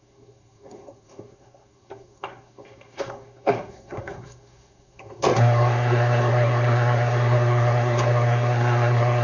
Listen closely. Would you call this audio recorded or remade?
remade